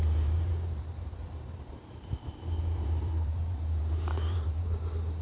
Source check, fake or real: fake